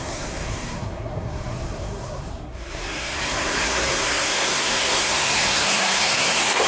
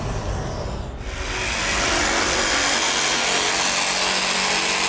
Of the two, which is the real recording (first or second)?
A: second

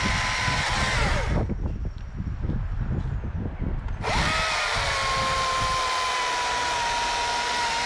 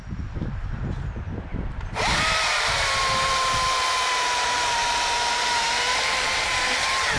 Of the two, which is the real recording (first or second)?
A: first